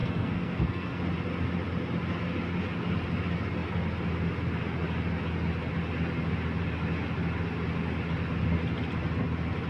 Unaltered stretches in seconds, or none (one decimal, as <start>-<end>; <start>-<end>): 1.0-9.7